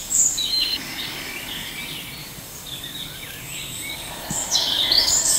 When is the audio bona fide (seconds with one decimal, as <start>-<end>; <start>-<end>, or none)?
1.7-2.2